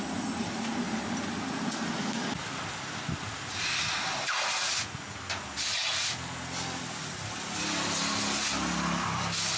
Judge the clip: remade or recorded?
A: recorded